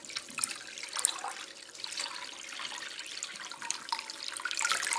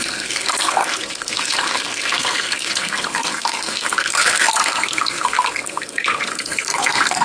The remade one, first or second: second